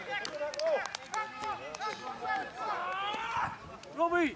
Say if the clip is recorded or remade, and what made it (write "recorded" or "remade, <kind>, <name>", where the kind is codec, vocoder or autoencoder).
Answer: recorded